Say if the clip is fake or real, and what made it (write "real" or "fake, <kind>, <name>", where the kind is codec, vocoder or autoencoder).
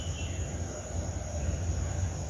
fake, vocoder, BigVGAN v2